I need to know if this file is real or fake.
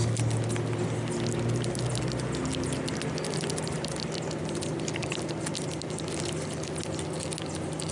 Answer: real